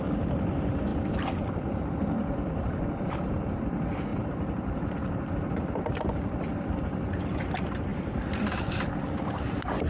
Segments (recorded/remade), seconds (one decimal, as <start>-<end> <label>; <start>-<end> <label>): 0.0-0.9 recorded; 0.9-3.3 remade; 3.3-4.1 recorded; 4.1-6.8 remade; 6.8-7.9 recorded; 7.9-9.4 remade; 9.4-9.9 recorded